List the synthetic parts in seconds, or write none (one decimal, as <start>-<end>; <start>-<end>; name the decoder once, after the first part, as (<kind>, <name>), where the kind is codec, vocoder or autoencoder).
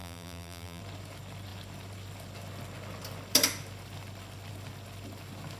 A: 0.0-0.8 (vocoder, BigVGAN v2)